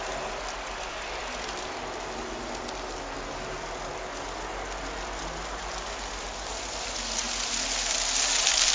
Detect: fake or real real